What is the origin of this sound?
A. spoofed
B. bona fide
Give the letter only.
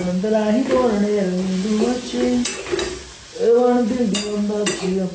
B